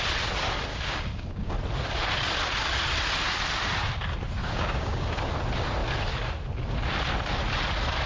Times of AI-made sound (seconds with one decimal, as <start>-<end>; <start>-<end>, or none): 0.7-1.5; 4.4-5.3